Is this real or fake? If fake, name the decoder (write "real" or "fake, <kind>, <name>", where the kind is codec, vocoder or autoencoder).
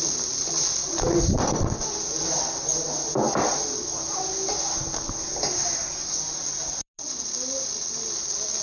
real